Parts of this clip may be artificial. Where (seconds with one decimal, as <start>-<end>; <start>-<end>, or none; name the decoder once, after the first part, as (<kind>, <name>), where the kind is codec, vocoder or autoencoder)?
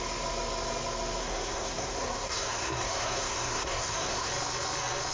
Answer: 1.2-4.3 (codec, SNAC)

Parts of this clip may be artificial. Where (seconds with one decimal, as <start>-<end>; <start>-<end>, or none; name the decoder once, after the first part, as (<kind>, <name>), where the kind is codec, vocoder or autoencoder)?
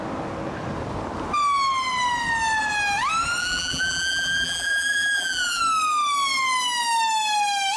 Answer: 3.4-5.6 (vocoder, BigVGAN v2)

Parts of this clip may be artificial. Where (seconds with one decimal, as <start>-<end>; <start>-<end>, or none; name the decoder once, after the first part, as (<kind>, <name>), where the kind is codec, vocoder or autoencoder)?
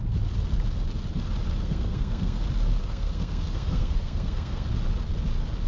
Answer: 1.6-2.4 (codec, SNAC); 2.8-4.7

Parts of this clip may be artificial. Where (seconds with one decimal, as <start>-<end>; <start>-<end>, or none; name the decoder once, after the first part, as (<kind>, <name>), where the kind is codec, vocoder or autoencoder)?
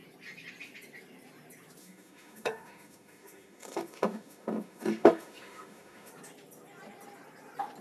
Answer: 1.8-6.1 (autoencoder, DAC-VAE)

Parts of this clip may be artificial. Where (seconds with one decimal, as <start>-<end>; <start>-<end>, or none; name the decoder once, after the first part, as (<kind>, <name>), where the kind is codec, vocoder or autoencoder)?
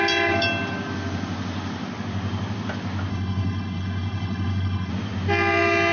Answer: 3.1-4.9 (codec, HILCodec)